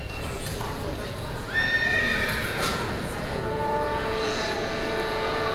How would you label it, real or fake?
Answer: fake